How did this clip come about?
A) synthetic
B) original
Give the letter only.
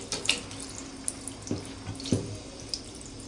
B